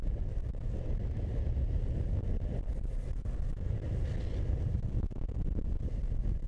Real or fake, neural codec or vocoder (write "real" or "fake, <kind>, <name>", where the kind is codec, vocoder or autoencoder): real